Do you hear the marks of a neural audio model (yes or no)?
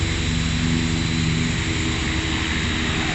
no